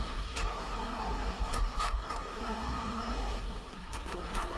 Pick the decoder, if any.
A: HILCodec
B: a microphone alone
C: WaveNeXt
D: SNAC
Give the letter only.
D